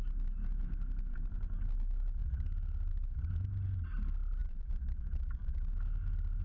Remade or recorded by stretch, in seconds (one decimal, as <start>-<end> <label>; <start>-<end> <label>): 0.0-4.4 recorded; 4.4-5.7 remade; 5.7-6.4 recorded